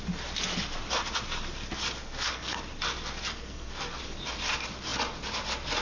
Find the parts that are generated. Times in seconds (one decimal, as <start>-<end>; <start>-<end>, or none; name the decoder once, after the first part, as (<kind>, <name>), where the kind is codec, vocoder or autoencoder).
2.0-2.6 (codec, SNAC); 3.3-4.0